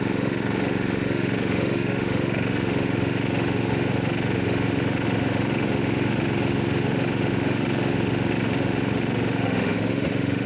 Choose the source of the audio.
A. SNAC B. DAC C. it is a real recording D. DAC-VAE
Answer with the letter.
D